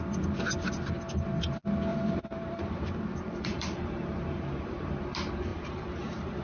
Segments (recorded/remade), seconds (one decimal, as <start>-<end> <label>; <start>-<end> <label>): 0.0-1.9 recorded; 1.9-5.0 remade; 5.0-5.5 recorded; 5.5-6.4 remade